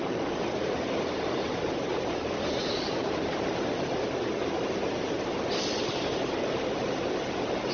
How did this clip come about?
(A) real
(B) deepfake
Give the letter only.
B